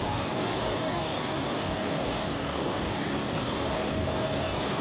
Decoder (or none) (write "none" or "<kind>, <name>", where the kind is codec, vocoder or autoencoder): codec, DAC